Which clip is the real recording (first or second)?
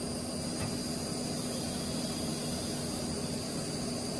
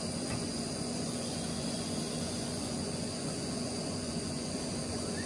first